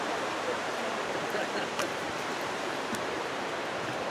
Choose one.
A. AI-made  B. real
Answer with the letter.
A